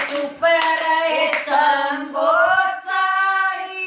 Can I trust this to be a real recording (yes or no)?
yes